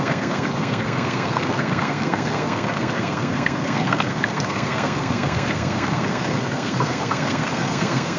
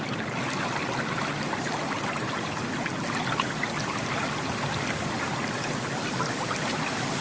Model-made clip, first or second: first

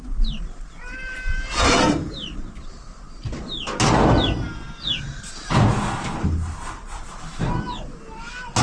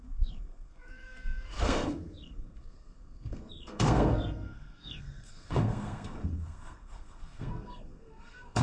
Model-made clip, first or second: second